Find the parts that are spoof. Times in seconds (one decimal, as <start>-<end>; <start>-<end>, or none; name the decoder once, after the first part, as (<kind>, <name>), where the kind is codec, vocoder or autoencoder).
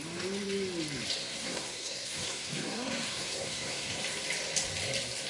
1.2-4.0 (codec, SNAC)